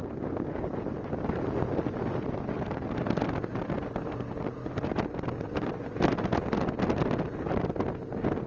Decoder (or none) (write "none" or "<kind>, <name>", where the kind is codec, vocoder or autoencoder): none